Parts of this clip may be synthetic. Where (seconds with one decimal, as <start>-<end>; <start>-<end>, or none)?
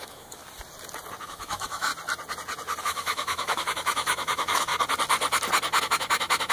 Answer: 0.0-0.4; 1.2-1.9; 2.8-4.7; 5.8-6.5